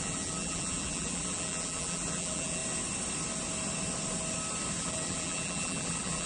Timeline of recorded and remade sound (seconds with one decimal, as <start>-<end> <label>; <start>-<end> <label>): 0.0-2.6 remade; 2.6-4.8 recorded; 4.8-6.3 remade